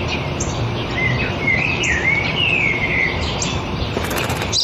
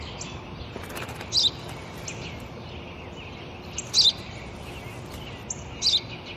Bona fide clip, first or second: second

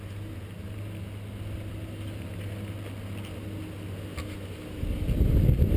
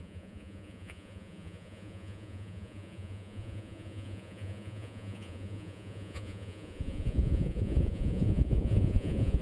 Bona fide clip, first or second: first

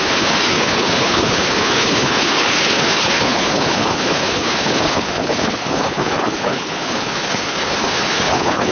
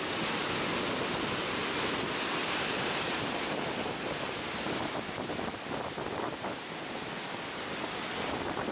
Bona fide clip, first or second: second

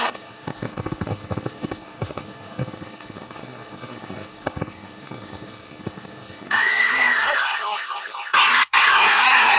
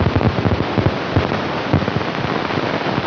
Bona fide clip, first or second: second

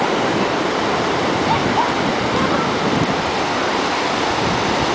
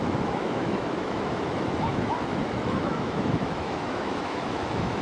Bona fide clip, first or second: first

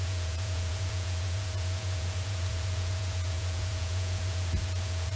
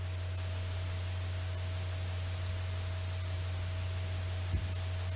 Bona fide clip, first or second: second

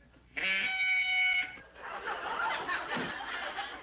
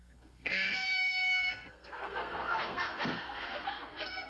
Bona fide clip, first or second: first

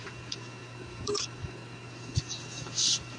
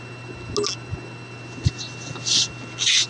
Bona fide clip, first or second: second